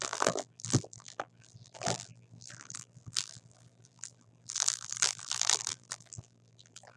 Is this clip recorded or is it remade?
remade